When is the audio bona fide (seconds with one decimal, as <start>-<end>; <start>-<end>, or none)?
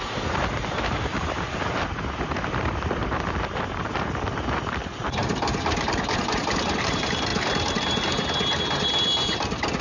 7.3-8.6